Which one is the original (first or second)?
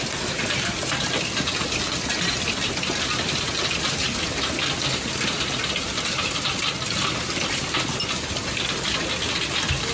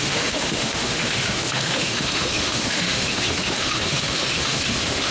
first